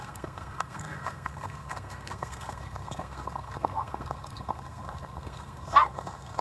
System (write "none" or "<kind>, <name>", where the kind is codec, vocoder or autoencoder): codec, SNAC